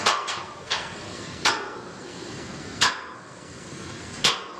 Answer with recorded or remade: remade